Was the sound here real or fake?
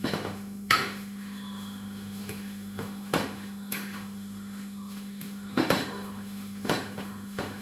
fake